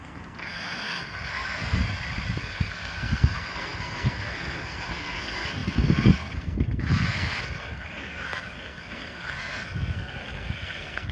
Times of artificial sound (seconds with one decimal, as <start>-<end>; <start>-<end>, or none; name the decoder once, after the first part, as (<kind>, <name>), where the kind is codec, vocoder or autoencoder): 0.0-1.8 (codec, SNAC); 2.4-11.1